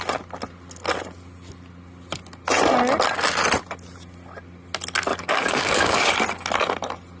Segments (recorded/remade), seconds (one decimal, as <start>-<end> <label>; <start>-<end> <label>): 0.0-5.1 recorded; 5.1-6.1 remade; 6.1-7.2 recorded